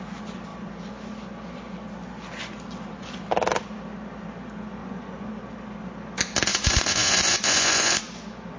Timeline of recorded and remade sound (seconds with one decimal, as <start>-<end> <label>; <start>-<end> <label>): 0.0-4.8 recorded; 4.8-5.3 remade; 5.3-6.5 recorded; 6.5-8.0 remade; 8.0-8.6 recorded